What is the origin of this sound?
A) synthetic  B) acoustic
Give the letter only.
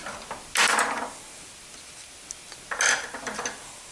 B